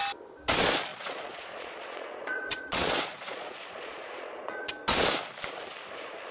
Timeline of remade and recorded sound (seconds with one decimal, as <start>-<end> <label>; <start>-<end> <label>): 0.0-0.9 recorded; 0.9-4.7 remade; 4.7-6.3 recorded